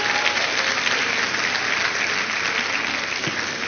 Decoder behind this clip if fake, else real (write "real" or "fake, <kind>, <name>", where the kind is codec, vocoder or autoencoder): real